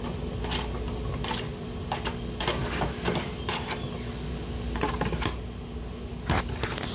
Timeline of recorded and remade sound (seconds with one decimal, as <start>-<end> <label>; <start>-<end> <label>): 0.0-6.9 recorded